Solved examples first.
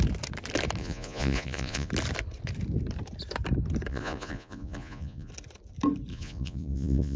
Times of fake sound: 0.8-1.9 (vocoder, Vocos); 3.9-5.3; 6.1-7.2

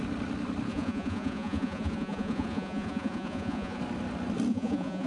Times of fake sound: 0.7-3.8 (vocoder, Vocos); 4.5-5.1

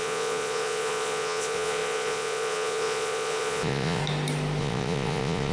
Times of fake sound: 0.0-4.0 (vocoder, Vocos); 4.6-5.5

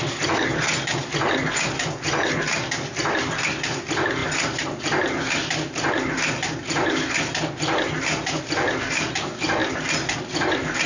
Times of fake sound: none